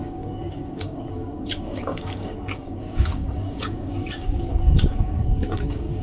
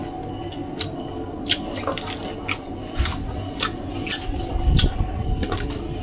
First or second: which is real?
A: second